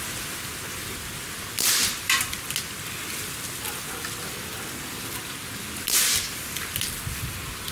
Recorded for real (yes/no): yes